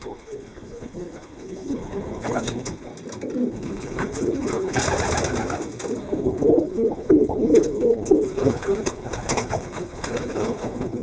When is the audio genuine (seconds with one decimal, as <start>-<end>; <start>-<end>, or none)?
2.9-3.5; 4.8-6.0